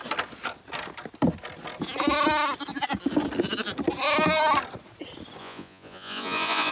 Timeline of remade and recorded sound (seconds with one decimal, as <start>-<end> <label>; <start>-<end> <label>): 0.0-5.4 recorded; 5.4-6.7 remade